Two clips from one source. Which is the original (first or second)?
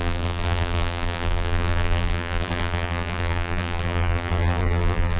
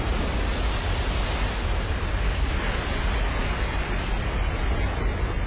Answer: second